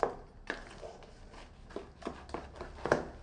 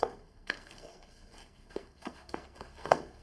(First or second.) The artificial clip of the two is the second